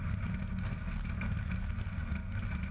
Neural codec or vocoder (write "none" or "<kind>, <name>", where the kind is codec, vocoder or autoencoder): none